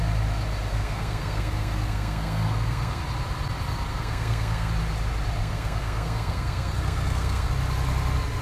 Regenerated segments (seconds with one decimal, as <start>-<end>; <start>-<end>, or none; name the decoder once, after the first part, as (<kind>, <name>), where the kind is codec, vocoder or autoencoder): 0.7-3.0 (codec, SNAC); 3.9-4.7; 5.4-7.5